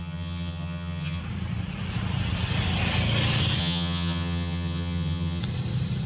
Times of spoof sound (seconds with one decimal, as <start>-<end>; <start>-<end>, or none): 0.0-1.2; 3.6-5.4